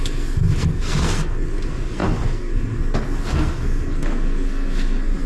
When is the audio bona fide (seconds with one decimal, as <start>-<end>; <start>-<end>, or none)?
none